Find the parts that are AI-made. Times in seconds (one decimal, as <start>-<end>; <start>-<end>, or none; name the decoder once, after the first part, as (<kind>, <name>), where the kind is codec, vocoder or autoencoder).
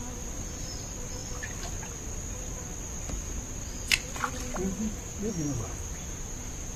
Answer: none